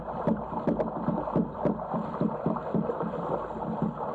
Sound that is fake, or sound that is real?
real